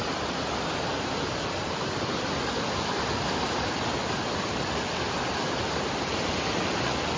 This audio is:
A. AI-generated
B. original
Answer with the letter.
B